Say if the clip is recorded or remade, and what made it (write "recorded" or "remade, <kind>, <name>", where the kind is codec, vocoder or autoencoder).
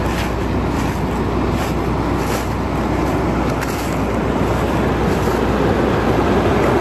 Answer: recorded